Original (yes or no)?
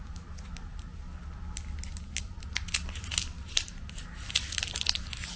yes